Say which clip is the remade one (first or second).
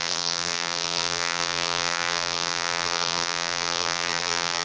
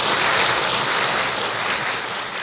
first